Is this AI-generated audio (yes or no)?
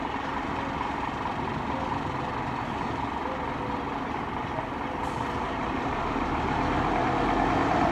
no